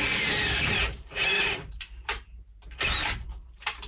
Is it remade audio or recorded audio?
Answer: remade